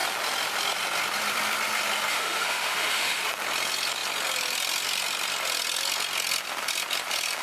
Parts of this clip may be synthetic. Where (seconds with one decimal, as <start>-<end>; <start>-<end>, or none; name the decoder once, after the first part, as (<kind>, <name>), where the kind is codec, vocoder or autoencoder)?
2.1-3.2 (autoencoder, DAC-VAE)

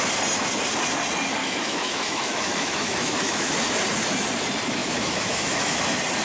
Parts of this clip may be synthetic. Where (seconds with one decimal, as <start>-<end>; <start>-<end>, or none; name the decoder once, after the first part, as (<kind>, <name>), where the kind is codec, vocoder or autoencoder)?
1.4-3.5 (autoencoder, DAC-VAE); 4.8-5.8

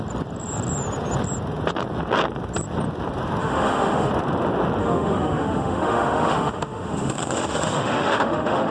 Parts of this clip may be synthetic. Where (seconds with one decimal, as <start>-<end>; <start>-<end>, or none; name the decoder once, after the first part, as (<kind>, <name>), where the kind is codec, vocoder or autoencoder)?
3.4-4.1 (autoencoder, DAC-VAE); 4.8-8.7

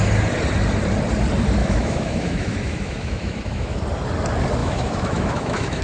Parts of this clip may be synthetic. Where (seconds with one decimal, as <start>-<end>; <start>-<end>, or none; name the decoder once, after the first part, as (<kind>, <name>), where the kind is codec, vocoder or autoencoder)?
1.6-3.8 (autoencoder, DAC-VAE); 4.6-5.8

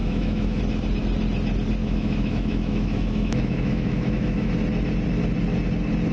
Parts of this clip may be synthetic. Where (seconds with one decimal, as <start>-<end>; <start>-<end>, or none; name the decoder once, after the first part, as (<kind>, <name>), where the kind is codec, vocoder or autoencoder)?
0.0-0.6 (autoencoder, DAC-VAE); 1.8-4.5